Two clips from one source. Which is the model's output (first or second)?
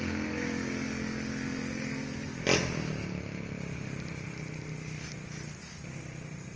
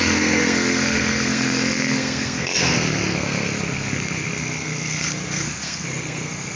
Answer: second